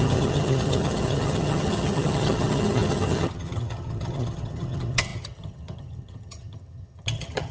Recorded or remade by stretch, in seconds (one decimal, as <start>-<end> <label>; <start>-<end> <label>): 0.0-7.5 remade